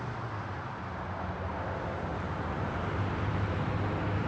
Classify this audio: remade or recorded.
recorded